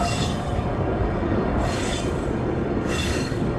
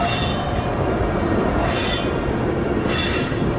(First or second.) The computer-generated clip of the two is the first